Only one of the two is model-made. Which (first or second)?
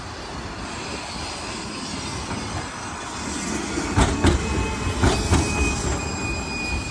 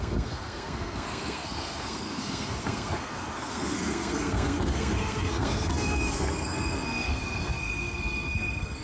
second